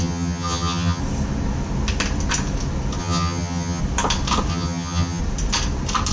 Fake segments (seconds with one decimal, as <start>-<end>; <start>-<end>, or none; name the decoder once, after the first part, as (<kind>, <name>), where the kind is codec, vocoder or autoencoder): 0.0-1.0 (vocoder, HiFi-GAN); 3.0-3.8; 4.5-5.2